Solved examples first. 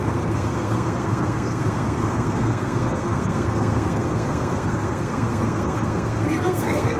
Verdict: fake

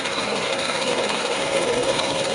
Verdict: fake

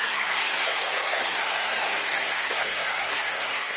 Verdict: fake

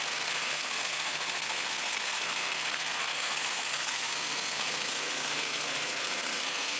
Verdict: fake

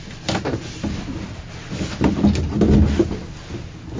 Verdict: real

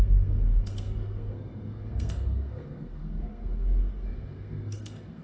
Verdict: fake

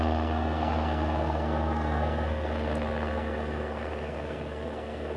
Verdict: fake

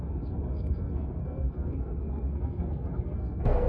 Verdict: fake